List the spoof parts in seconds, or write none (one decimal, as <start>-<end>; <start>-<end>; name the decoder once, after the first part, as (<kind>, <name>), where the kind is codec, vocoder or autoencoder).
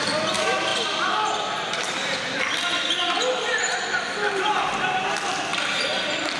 none